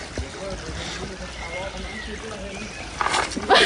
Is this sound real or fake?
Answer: real